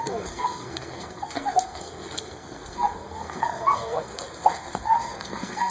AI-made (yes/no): yes